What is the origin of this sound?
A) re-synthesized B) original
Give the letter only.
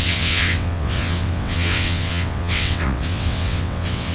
A